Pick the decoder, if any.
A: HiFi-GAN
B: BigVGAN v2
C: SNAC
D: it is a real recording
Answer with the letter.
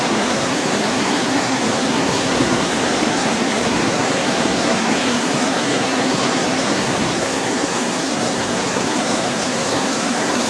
C